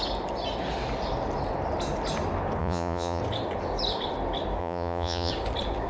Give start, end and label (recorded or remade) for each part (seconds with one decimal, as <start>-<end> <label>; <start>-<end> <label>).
0.0-2.6 recorded; 2.6-3.2 remade; 3.2-4.6 recorded; 4.6-5.3 remade; 5.3-5.9 recorded